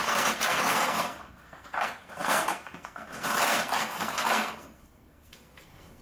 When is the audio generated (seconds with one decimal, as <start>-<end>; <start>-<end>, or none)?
0.0-6.0